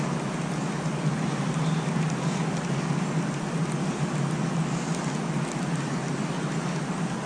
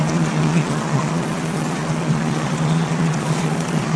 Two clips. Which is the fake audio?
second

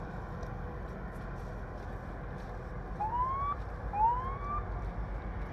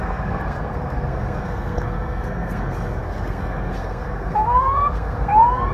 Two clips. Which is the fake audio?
second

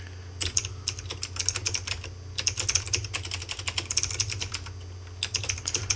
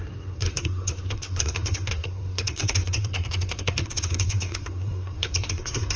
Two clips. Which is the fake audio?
second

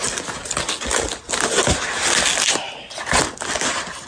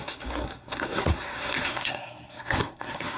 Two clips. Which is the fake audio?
second